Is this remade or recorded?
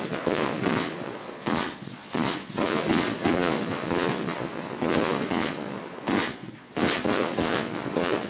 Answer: remade